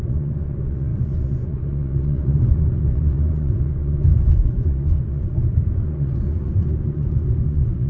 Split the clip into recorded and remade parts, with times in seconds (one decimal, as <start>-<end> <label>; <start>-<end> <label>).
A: 0.0-7.9 remade